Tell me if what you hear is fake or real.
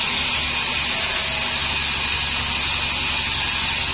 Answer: real